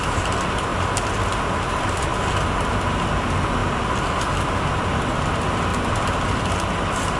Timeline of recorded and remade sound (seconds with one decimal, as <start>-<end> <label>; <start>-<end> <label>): 0.0-7.2 recorded